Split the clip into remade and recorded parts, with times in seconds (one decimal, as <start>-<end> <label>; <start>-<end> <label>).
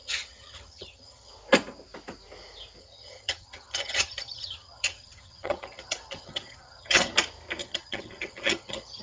0.0-1.3 remade; 1.3-2.8 recorded; 2.8-7.1 remade; 7.1-7.6 recorded; 7.6-9.0 remade